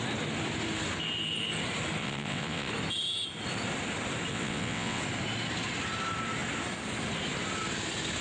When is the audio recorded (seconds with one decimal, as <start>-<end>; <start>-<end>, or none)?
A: 0.0-2.0; 2.7-4.3; 5.0-8.2